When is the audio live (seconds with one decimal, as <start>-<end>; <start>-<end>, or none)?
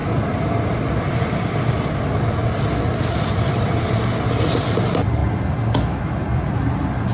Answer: 0.0-1.7; 2.4-2.9; 5.2-6.0